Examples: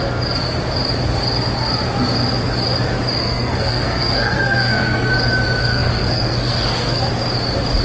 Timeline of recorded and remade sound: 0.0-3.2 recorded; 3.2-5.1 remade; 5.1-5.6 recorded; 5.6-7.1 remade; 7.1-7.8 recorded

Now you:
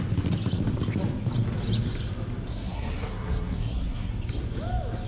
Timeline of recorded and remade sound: 0.0-2.5 recorded; 2.5-4.1 remade; 4.1-5.1 recorded

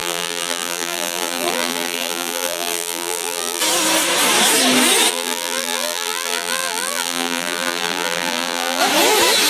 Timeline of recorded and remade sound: 0.0-3.6 remade; 3.6-5.1 recorded; 5.1-8.8 remade; 8.8-9.5 recorded